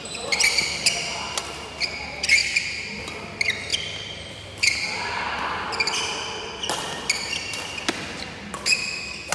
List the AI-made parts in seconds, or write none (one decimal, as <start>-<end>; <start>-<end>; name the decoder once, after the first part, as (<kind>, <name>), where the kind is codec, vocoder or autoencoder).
none